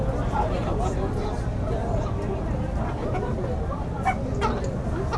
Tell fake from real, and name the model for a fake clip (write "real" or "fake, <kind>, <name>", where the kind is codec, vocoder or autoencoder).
real